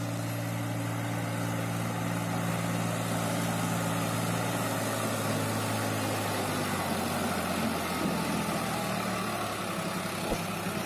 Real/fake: real